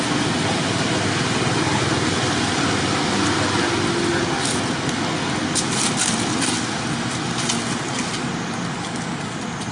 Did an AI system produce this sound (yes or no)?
no